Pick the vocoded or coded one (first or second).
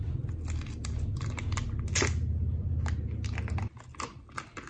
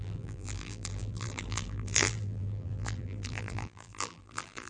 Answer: second